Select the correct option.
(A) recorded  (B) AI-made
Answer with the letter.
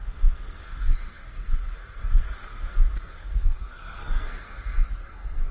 B